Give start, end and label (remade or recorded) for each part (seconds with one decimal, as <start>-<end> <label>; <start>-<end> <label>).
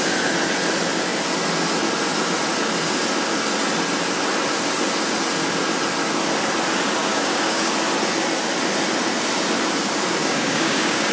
0.0-7.0 recorded; 7.0-7.7 remade; 7.7-10.2 recorded; 10.2-11.1 remade